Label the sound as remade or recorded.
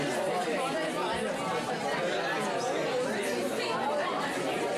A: recorded